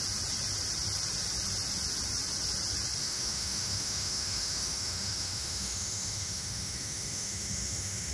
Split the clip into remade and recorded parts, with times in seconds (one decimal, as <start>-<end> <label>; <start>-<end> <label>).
0.0-3.0 recorded; 3.0-8.1 remade